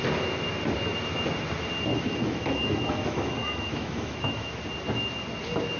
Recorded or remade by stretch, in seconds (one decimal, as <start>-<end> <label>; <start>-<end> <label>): 0.0-1.9 recorded; 1.9-4.6 remade; 4.6-5.8 recorded